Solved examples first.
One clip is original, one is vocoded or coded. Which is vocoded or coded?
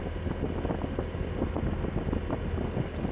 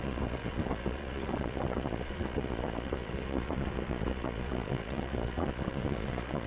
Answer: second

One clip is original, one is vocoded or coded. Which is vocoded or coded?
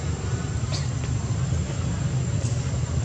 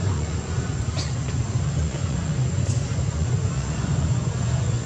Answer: second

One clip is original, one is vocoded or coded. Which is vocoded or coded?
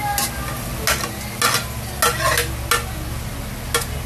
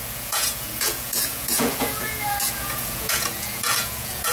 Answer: second